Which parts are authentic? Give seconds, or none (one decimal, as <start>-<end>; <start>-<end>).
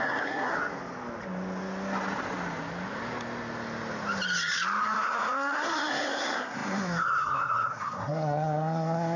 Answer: 0.5-4.8